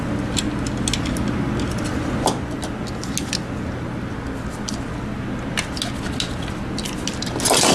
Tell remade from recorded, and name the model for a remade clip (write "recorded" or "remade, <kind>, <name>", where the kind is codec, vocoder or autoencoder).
recorded